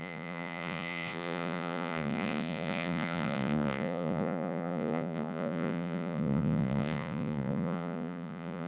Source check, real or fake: fake